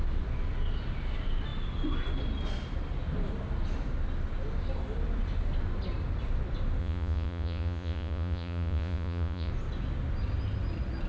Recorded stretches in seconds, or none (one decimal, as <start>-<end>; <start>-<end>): 0.0-6.8; 9.5-11.1